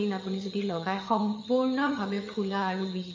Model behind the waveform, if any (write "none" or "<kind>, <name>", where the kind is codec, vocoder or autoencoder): vocoder, HiFi-GAN